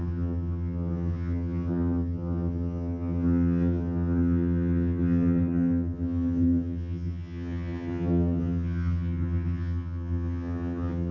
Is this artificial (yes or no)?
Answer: yes